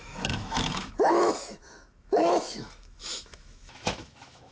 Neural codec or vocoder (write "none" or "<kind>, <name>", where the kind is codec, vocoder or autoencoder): autoencoder, DAC-VAE